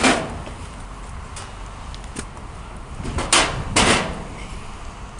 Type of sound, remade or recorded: recorded